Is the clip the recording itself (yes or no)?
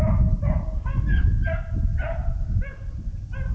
yes